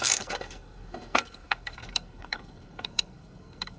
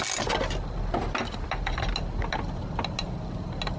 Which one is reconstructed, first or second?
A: first